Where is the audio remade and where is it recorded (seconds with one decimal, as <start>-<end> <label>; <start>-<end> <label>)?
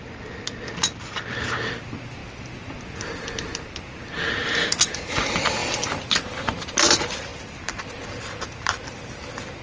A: 0.0-9.6 recorded